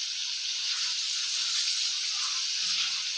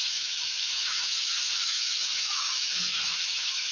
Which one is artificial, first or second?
second